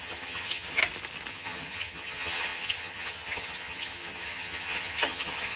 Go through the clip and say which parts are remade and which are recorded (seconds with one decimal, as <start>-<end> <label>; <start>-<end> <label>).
0.0-0.8 remade; 0.8-1.3 recorded; 1.3-5.6 remade